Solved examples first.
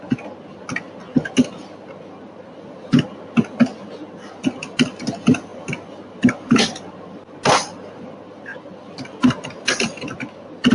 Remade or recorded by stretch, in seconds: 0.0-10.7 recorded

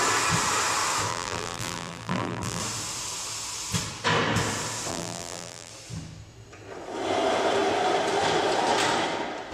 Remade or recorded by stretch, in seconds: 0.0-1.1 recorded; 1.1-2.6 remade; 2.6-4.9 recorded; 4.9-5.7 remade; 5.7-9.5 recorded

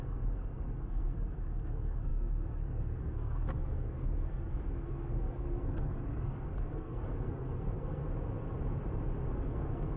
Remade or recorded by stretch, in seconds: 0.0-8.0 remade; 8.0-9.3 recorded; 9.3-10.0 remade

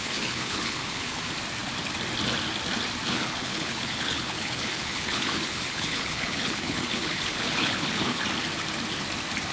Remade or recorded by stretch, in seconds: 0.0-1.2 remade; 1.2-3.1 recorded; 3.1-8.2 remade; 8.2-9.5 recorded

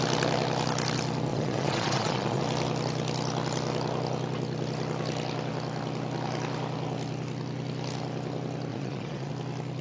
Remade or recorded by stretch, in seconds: 0.0-1.3 recorded; 1.3-2.4 remade; 2.4-8.7 recorded; 8.7-9.3 remade; 9.3-9.8 recorded

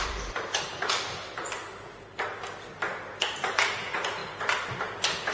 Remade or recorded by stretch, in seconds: 0.0-0.7 remade; 0.7-3.2 recorded; 3.2-4.2 remade; 4.2-5.3 recorded

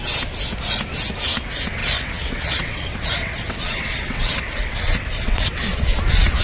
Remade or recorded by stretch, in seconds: 0.0-1.8 recorded; 1.8-5.6 remade; 5.6-6.4 recorded